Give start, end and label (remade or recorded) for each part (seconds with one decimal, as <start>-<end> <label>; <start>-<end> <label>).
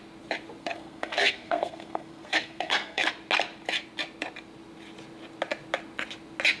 0.0-0.6 recorded; 0.6-3.1 remade; 3.1-6.6 recorded